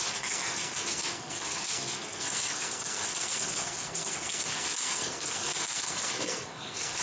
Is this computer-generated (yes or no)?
yes